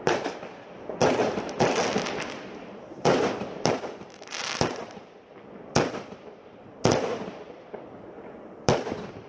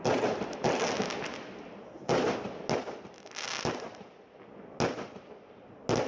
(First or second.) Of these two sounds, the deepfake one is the first